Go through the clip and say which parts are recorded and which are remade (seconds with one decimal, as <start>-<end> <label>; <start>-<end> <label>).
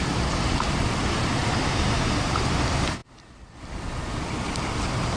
0.0-1.4 recorded; 1.4-2.2 remade; 2.2-5.2 recorded